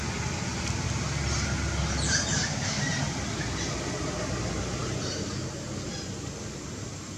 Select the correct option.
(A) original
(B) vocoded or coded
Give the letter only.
A